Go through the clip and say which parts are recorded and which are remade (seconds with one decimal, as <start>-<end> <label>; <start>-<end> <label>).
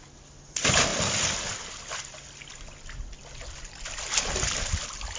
0.0-5.2 recorded